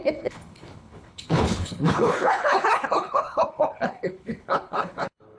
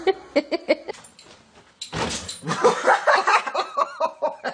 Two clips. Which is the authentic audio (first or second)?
second